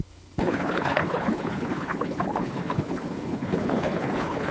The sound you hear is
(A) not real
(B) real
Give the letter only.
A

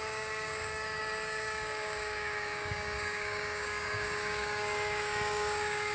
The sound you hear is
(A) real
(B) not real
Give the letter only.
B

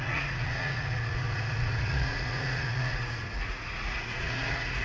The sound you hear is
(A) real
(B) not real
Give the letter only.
B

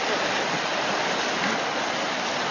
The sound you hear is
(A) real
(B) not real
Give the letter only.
A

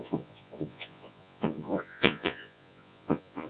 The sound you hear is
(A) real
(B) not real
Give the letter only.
B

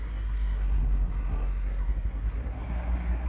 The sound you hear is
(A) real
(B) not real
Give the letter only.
B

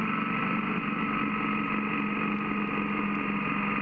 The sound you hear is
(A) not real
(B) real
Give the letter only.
B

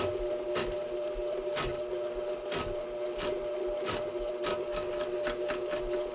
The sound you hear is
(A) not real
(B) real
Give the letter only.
B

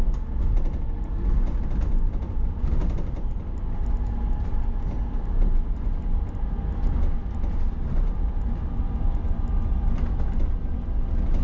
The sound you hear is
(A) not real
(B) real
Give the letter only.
B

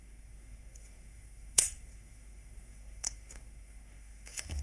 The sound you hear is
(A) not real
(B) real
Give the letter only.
A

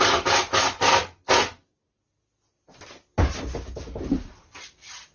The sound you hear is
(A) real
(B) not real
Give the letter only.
A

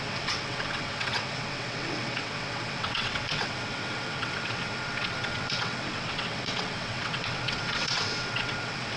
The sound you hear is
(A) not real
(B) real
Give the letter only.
A